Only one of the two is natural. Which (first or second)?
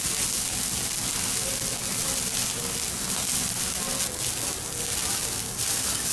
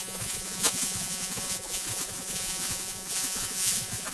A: first